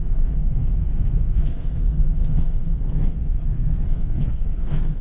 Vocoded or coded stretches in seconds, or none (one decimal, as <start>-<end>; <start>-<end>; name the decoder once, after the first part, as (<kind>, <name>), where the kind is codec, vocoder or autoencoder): 0.0-5.0 (codec, SNAC)